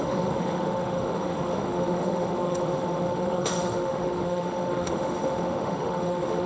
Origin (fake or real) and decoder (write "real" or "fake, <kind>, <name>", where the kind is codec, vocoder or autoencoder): fake, autoencoder, DAC-VAE